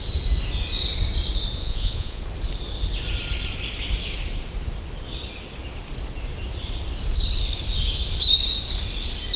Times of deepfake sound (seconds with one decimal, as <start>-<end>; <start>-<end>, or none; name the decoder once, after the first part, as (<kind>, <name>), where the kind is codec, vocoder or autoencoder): 1.6-2.2 (vocoder, Vocos)